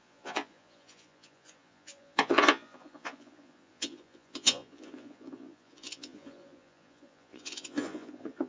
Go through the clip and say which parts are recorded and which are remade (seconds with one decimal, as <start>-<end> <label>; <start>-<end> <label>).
0.0-8.5 remade